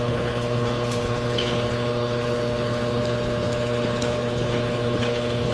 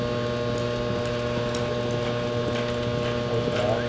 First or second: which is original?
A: second